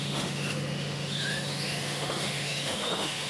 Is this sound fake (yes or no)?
yes